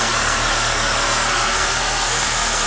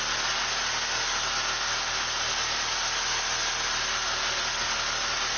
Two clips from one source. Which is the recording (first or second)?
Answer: second